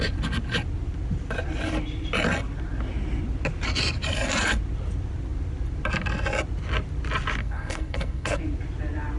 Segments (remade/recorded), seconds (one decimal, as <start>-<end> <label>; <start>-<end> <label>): 0.0-7.4 recorded; 7.4-8.4 remade; 8.4-9.2 recorded